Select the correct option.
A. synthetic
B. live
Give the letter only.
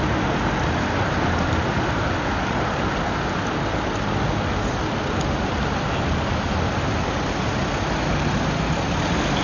B